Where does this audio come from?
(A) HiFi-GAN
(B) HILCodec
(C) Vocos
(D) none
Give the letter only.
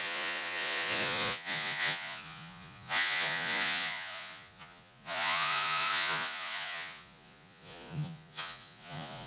C